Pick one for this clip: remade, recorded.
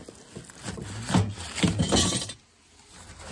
recorded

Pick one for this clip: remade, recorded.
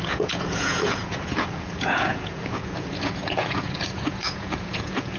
remade